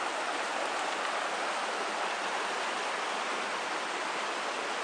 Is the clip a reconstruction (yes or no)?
no